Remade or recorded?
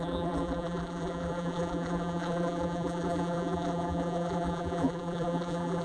remade